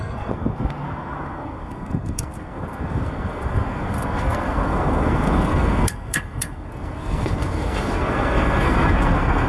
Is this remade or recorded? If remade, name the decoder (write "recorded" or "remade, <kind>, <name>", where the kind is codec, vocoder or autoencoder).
remade, codec, SNAC